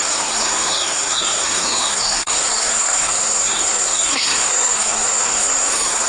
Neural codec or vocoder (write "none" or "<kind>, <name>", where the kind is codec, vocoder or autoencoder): codec, SNAC